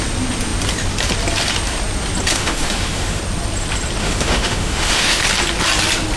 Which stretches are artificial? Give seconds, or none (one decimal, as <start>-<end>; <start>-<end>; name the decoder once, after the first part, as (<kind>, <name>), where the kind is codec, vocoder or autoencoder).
2.3-3.2 (autoencoder, DAC-VAE); 4.0-5.2